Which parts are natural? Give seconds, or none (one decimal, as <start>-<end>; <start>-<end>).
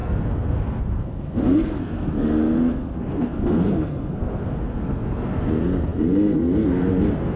none